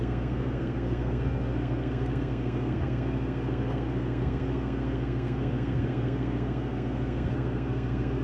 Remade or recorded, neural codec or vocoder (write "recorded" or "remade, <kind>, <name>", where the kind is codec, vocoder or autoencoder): remade, codec, SNAC